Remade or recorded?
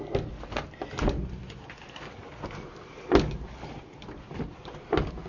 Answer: recorded